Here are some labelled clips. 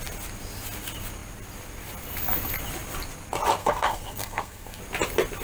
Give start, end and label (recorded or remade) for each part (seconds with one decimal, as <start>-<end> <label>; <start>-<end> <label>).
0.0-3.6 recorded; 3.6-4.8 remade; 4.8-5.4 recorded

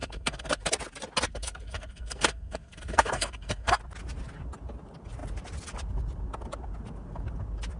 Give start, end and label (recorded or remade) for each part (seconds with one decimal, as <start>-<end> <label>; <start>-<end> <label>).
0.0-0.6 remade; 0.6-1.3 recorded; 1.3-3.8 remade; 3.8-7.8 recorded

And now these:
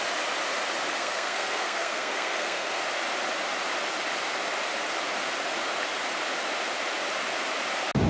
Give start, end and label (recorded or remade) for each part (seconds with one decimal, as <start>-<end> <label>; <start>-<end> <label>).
0.0-1.0 recorded; 1.0-2.8 remade; 2.8-8.1 recorded